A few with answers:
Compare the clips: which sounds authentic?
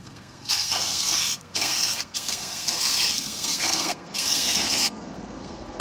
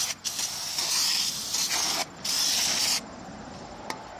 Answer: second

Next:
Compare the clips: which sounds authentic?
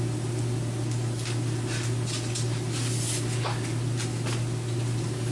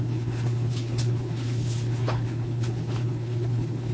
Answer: first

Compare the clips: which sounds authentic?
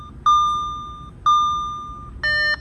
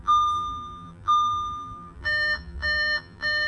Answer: first